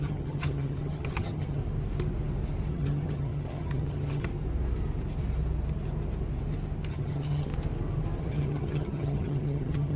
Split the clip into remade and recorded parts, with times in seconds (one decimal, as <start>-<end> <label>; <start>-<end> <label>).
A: 0.0-1.6 remade; 1.6-2.7 recorded; 2.7-4.3 remade; 4.3-6.9 recorded; 6.9-7.5 remade; 7.5-8.2 recorded; 8.2-10.0 remade